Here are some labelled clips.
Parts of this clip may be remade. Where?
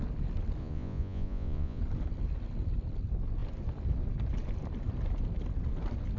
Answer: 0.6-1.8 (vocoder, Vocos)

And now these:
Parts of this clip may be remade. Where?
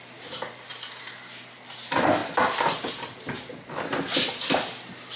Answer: none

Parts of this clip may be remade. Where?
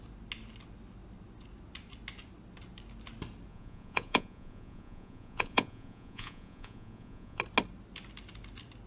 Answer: 3.5-7.4 (vocoder, Vocos)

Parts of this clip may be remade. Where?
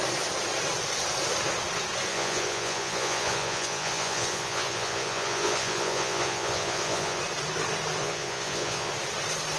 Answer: 2.1-7.2 (vocoder, Vocos); 8.0-8.9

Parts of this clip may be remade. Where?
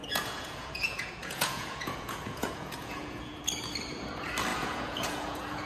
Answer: 0.0-3.4 (vocoder, Vocos); 4.5-5.7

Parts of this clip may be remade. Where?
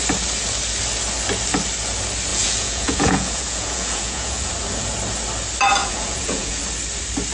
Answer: 2.3-4.5 (vocoder, Vocos); 5.8-6.6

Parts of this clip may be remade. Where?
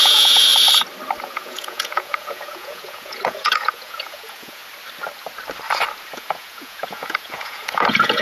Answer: 0.0-0.5 (vocoder, Vocos); 1.2-4.6; 6.1-8.2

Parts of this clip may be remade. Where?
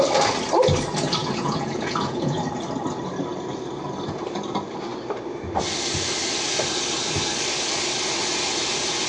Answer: 1.2-2.4 (vocoder, Vocos)